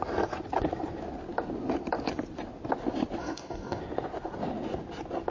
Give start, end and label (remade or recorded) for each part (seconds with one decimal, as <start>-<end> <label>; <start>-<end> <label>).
0.0-3.2 recorded; 3.2-3.8 remade; 3.8-5.3 recorded